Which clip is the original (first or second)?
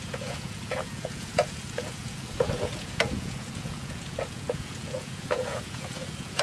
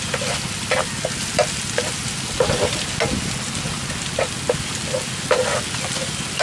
second